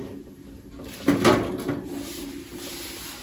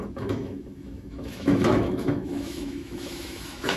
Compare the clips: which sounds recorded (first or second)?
first